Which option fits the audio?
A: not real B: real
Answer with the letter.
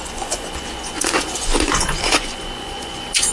A